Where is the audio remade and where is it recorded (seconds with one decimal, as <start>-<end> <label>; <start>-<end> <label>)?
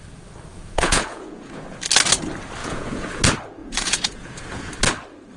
0.0-0.5 recorded; 0.5-1.8 remade; 1.8-2.6 recorded; 2.6-3.2 remade; 3.2-3.6 recorded; 3.6-4.7 remade; 4.7-5.4 recorded